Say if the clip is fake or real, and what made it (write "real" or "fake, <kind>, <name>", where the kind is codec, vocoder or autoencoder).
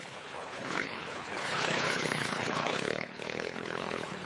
fake, codec, HILCodec